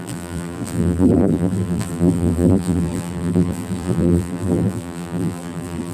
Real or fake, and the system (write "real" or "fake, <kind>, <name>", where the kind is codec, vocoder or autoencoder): fake, vocoder, BigVGAN v2